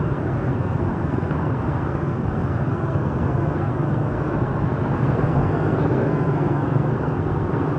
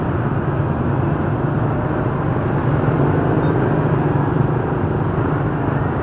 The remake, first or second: first